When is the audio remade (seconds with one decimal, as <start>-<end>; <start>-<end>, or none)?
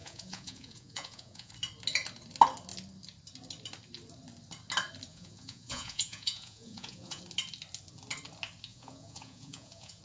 0.0-1.5; 5.1-7.2; 8.7-10.0